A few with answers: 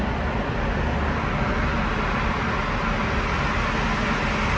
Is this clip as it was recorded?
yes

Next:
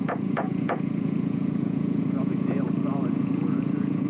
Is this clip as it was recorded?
no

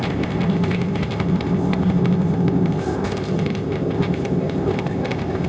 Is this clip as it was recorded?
no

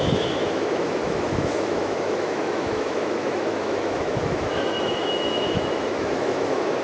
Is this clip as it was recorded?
no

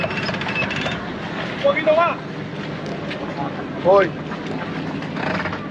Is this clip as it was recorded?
yes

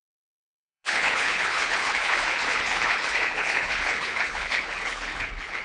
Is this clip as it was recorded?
no